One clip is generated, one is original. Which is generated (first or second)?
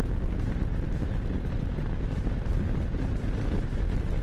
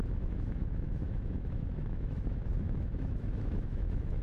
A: second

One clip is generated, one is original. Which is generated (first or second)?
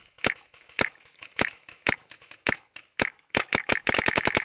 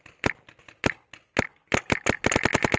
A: first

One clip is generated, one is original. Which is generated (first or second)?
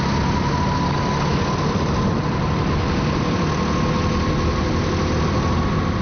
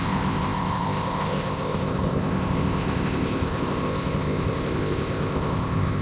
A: second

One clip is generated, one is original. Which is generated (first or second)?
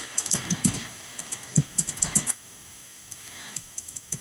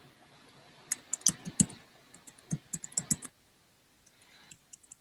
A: first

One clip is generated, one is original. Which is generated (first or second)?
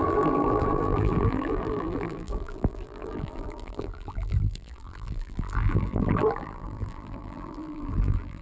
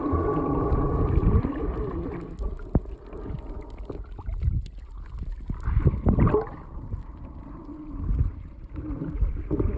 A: first